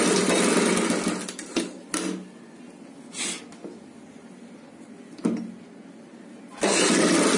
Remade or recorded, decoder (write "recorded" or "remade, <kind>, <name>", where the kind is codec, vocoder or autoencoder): recorded